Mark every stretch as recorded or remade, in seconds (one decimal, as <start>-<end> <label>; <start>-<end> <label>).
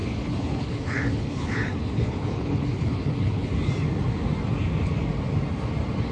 0.0-3.7 remade; 3.7-6.1 recorded